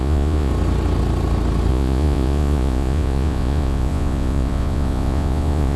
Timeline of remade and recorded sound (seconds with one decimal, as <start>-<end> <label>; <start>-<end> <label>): 0.0-0.5 remade; 0.5-1.7 recorded; 1.7-5.8 remade